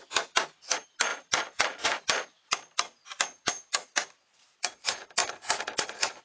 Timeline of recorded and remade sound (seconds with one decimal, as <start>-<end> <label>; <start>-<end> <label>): 0.0-1.1 recorded; 1.1-4.7 remade; 4.7-5.2 recorded; 5.2-6.2 remade